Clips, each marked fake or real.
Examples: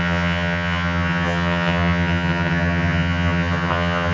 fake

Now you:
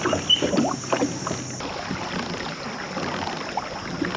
real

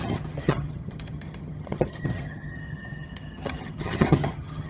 fake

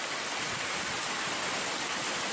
real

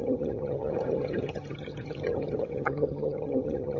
fake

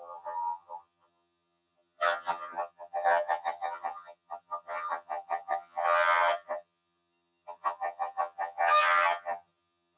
fake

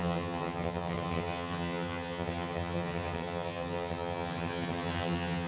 fake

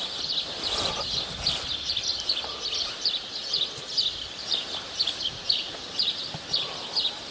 real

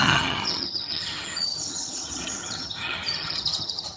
fake